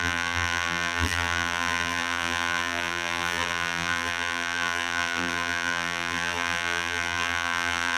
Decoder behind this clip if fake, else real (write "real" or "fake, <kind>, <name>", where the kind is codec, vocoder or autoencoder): fake, vocoder, BigVGAN v2